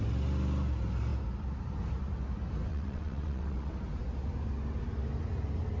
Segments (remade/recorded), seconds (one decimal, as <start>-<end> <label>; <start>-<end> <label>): 0.0-2.7 recorded; 2.7-3.7 remade; 3.7-5.8 recorded